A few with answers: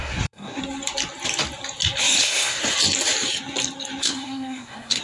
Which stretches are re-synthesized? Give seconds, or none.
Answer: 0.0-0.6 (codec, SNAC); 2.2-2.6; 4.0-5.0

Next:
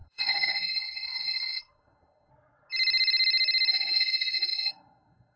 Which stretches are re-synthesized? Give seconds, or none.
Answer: 0.0-2.3 (codec, SNAC); 3.7-5.4

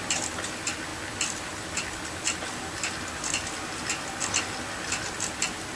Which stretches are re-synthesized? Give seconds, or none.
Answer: none